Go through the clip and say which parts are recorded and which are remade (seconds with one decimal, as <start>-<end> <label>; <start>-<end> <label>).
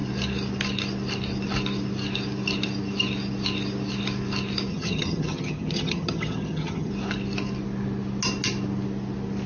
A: 0.0-4.7 recorded; 4.7-6.9 remade; 6.9-9.5 recorded